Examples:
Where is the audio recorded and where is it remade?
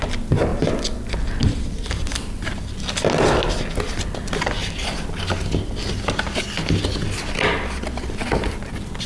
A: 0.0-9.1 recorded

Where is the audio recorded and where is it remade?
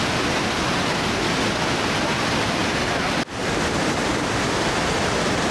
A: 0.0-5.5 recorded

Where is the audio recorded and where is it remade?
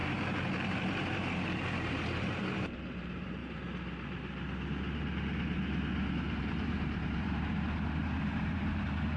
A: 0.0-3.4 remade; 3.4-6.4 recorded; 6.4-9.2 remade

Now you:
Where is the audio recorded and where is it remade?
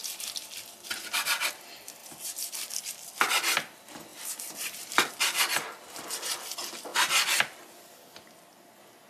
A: 0.0-2.0 recorded; 2.0-2.8 remade; 2.8-4.1 recorded; 4.1-5.1 remade; 5.1-6.9 recorded; 6.9-7.9 remade; 7.9-9.1 recorded